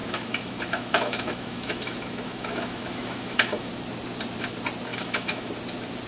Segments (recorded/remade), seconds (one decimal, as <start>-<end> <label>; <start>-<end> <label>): 0.0-3.7 remade; 3.7-4.9 recorded; 4.9-5.5 remade; 5.5-6.1 recorded

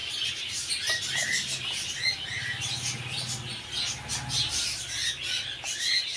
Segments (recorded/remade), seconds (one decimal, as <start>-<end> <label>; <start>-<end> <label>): 0.0-6.2 recorded

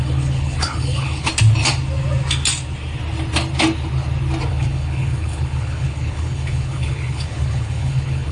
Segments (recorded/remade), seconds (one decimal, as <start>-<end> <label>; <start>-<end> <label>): 0.0-1.3 remade; 1.3-4.5 recorded; 4.5-8.3 remade

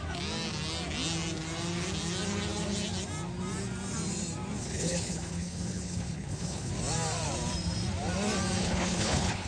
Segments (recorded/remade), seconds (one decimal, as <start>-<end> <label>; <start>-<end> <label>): 0.0-4.6 recorded; 4.6-6.7 remade; 6.7-8.6 recorded; 8.6-9.5 remade

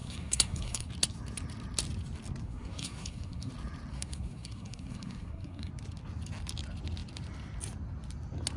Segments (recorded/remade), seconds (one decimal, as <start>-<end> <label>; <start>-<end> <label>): 0.0-0.9 remade; 0.9-2.4 recorded; 2.4-3.5 remade; 3.5-3.9 recorded; 3.9-5.7 remade; 5.7-8.6 recorded

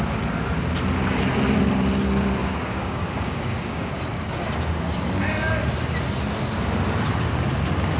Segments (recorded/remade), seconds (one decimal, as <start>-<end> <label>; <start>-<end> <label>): 0.0-2.4 recorded; 2.4-5.5 remade; 5.5-8.0 recorded